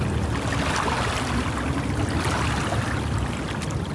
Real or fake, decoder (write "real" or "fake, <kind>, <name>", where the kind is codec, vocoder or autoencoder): real